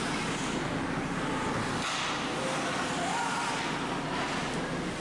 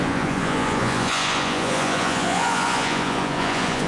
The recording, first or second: first